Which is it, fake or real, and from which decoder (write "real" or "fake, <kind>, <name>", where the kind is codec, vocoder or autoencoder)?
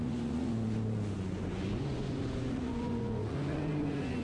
fake, vocoder, Vocos